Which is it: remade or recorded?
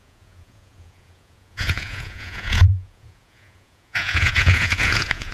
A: remade